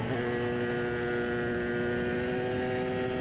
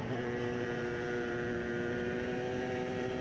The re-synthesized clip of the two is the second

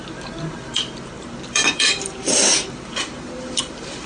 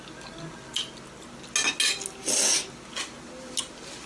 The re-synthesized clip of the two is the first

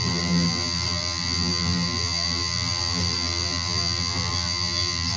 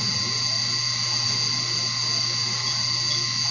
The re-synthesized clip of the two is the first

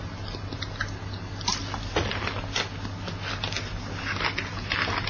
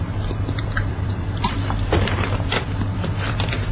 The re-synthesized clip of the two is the second